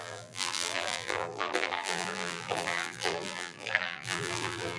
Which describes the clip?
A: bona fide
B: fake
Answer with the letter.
B